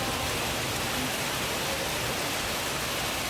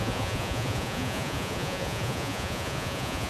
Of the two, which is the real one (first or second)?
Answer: first